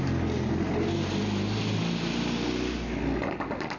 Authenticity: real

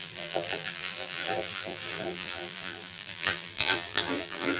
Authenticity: fake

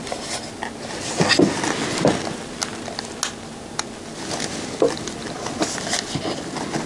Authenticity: real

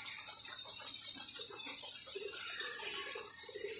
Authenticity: real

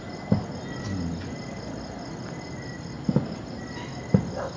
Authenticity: real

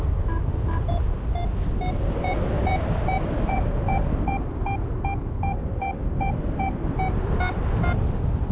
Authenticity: real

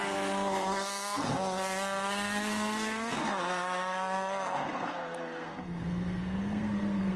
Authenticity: fake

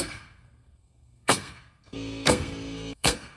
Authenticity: fake